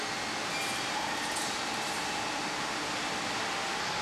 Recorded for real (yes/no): yes